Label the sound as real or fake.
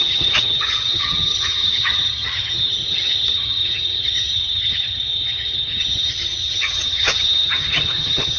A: fake